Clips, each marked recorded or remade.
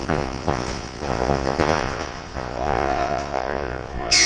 remade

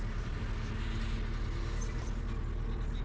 recorded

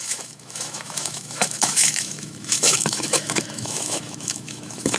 remade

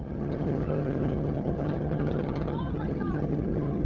remade